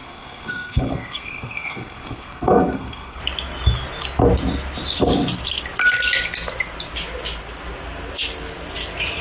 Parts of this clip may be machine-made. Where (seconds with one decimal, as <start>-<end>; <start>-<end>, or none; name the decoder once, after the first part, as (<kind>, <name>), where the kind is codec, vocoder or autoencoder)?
0.0-3.2 (codec, SNAC)